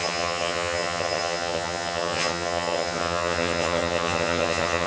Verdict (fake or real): fake